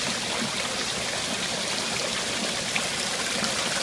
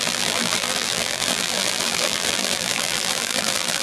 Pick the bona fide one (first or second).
first